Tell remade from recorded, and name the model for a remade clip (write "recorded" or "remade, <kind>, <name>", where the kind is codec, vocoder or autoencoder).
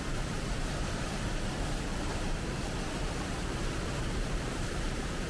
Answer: remade, vocoder, BigVGAN v2